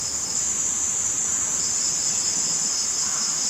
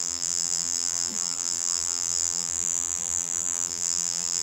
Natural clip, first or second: first